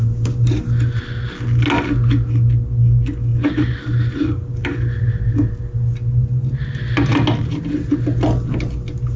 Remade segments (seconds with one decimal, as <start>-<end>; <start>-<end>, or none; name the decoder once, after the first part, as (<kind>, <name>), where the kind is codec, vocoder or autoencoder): none